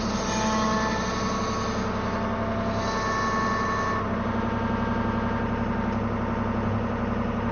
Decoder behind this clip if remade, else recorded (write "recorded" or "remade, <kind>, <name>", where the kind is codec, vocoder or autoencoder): recorded